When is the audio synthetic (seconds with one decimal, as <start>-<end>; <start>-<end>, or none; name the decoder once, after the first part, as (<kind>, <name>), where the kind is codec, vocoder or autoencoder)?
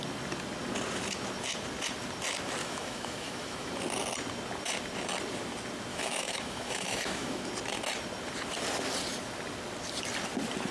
2.6-3.7 (autoencoder, DAC-VAE); 5.9-7.4